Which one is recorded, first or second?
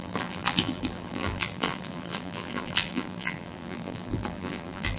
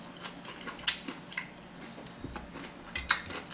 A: second